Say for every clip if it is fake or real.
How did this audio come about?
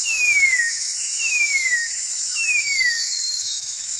fake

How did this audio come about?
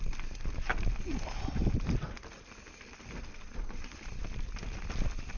real